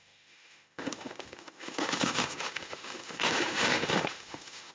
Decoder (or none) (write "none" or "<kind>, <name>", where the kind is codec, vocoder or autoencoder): autoencoder, DAC-VAE